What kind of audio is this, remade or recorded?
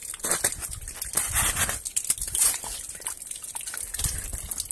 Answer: recorded